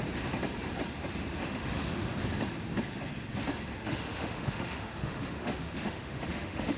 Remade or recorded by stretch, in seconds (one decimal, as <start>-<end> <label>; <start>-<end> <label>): 0.0-1.4 recorded; 1.4-2.1 remade; 2.1-3.7 recorded; 3.7-6.8 remade